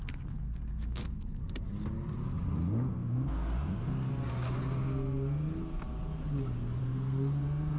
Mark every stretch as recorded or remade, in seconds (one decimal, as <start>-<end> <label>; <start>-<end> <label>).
0.0-1.4 remade; 1.4-2.9 recorded; 2.9-4.1 remade; 4.1-6.8 recorded; 6.8-7.8 remade